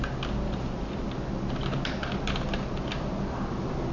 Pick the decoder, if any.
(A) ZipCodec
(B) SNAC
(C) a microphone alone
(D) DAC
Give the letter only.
C